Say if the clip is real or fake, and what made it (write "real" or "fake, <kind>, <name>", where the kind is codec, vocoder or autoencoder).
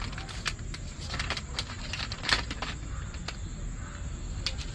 real